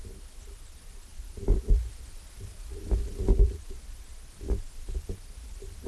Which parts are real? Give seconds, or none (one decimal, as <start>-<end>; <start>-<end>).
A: 0.0-5.9